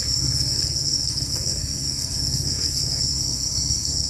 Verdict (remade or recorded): remade